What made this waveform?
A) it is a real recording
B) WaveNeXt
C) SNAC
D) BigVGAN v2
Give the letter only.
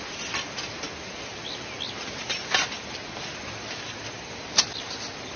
A